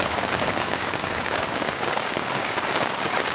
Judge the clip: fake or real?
fake